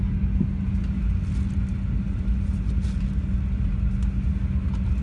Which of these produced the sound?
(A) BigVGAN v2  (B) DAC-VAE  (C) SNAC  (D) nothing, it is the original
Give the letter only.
D